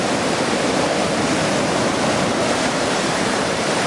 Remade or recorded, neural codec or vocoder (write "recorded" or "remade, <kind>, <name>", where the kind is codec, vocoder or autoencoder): remade, vocoder, BigVGAN v2